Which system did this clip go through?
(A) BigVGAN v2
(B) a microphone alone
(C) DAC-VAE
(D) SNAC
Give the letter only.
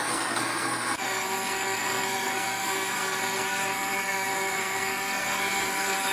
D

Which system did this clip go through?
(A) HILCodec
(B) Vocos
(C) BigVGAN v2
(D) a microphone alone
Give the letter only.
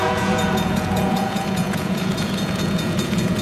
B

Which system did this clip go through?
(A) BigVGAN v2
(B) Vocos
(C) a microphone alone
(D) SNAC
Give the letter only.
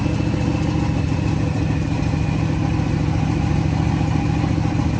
C